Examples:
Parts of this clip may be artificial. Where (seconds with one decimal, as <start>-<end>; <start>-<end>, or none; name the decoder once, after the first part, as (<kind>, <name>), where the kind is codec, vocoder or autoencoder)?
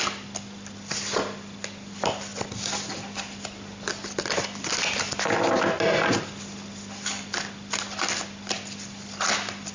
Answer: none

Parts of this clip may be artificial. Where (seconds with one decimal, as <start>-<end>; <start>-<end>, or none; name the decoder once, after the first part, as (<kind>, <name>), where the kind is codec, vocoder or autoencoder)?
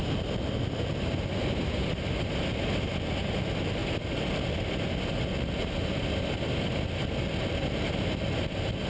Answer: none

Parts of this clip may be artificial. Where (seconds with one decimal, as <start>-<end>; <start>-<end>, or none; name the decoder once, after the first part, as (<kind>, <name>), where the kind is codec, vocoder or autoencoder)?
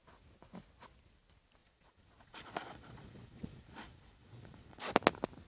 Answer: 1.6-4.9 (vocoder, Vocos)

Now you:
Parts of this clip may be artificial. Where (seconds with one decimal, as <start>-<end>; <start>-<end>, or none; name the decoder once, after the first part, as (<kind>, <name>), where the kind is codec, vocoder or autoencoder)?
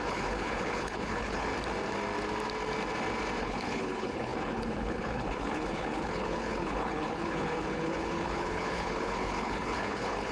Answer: 0.0-1.5 (codec, HILCodec); 3.4-10.3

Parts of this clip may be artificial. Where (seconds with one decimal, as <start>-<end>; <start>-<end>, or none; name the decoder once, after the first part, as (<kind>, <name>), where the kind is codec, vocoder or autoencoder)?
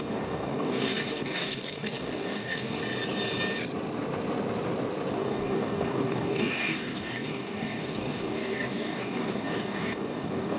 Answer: 0.0-2.8 (codec, DAC); 5.1-10.6